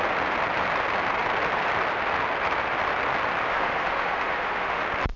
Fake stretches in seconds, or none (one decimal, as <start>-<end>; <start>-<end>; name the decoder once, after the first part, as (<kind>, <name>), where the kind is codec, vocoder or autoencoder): 3.5-4.8 (autoencoder, DAC-VAE)